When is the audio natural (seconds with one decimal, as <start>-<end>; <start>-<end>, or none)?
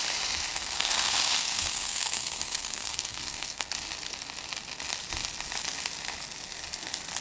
0.0-0.5; 3.7-7.2